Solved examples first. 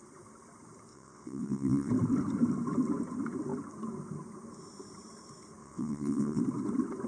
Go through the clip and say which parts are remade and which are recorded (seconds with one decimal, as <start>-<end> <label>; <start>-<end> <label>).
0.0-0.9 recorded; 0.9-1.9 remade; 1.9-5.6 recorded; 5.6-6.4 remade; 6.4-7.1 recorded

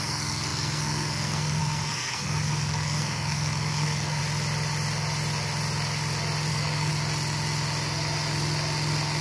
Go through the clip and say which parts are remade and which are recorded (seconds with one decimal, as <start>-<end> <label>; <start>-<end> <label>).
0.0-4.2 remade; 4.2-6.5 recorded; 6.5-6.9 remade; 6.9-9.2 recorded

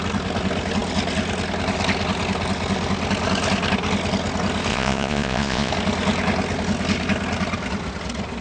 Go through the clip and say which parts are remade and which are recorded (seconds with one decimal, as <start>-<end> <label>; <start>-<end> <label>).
0.0-4.7 recorded; 4.7-5.7 remade; 5.7-8.4 recorded